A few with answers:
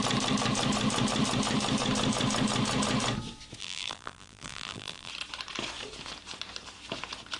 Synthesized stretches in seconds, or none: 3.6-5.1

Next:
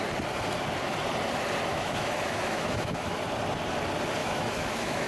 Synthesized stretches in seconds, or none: 1.7-3.1; 4.2-5.1